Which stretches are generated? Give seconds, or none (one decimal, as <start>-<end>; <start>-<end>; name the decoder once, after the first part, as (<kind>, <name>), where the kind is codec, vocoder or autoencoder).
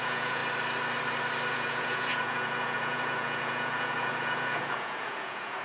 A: 0.0-0.4 (vocoder, Vocos); 1.5-5.6